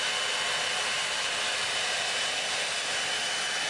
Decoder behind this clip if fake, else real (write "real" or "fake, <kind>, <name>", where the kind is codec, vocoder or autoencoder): real